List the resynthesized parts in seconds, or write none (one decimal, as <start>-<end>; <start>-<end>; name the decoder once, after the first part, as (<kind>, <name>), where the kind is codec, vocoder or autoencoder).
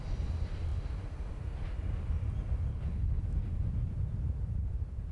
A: 2.7-3.2 (codec, HILCodec)